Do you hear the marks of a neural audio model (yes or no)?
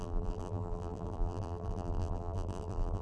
yes